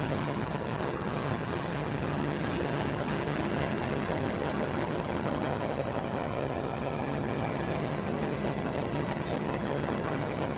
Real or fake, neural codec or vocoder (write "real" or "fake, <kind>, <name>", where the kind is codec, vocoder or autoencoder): fake, vocoder, HiFi-GAN